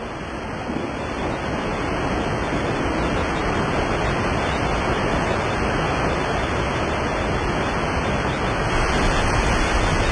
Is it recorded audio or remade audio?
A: recorded